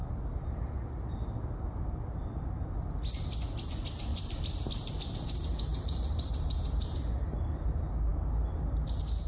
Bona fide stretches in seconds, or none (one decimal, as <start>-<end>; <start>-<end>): 0.0-4.1; 4.7-5.7; 7.4-9.3